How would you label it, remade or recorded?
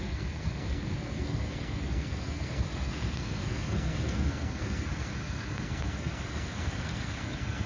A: remade